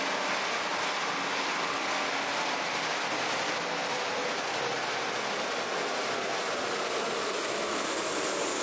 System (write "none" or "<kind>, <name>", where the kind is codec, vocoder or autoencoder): none